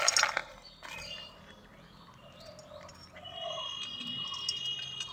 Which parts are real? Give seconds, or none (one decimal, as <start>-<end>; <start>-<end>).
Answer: 0.0-5.1